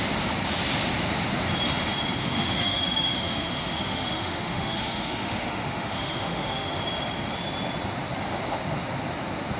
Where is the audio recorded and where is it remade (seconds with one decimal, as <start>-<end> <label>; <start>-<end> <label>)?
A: 0.0-2.2 recorded; 2.2-6.8 remade; 6.8-9.6 recorded